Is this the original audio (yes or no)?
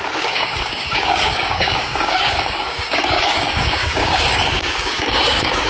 no